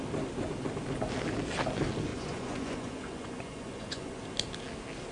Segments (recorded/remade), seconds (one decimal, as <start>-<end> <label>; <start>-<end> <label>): 0.0-2.1 recorded; 2.1-4.2 remade; 4.2-5.1 recorded